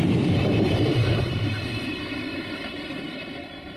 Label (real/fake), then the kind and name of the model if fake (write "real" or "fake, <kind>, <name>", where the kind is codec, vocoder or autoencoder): fake, vocoder, BigVGAN v2